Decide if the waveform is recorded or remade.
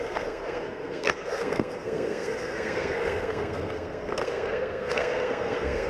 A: remade